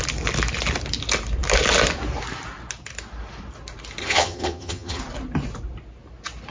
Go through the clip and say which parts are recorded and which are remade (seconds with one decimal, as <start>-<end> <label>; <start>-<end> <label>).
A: 0.0-4.0 recorded; 4.0-5.0 remade; 5.0-6.5 recorded